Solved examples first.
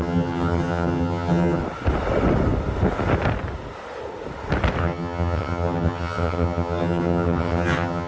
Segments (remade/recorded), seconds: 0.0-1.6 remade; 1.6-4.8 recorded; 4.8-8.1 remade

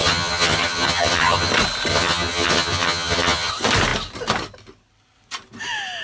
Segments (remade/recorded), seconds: 0.0-1.5 remade; 1.5-1.9 recorded; 1.9-3.5 remade; 3.5-6.0 recorded

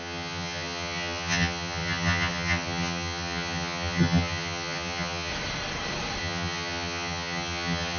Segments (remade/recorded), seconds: 0.0-5.3 remade; 5.3-6.2 recorded; 6.2-8.0 remade

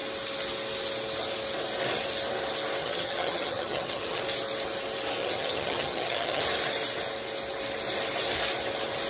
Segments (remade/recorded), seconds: 0.0-2.8 recorded; 2.8-4.2 remade; 4.2-5.2 recorded; 5.2-6.4 remade; 6.4-9.1 recorded

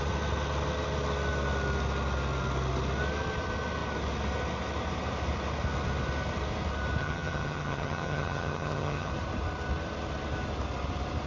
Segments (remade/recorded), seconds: 0.0-7.0 recorded; 7.0-9.1 remade; 9.1-11.3 recorded

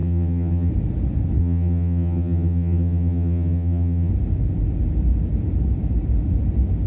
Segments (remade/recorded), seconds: 0.0-0.7 remade; 0.7-1.4 recorded; 1.4-4.1 remade; 4.1-6.9 recorded